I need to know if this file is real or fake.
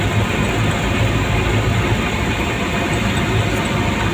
real